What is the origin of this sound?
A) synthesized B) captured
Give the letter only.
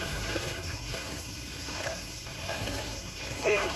A